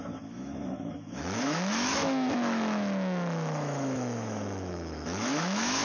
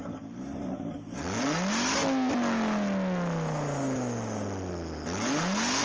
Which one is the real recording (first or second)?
second